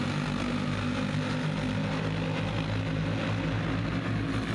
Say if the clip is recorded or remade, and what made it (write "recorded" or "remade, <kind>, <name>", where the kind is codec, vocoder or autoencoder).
recorded